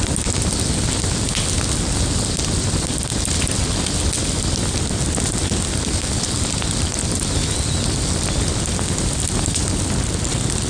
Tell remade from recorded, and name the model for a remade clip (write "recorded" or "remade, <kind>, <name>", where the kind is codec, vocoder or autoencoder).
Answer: recorded